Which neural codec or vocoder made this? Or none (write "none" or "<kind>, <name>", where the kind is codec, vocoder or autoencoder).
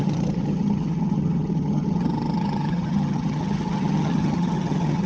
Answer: vocoder, HiFi-GAN